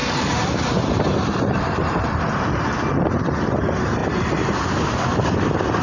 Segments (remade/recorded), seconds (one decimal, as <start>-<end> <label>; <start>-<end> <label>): 0.0-2.4 remade; 2.4-4.0 recorded; 4.0-5.3 remade; 5.3-5.8 recorded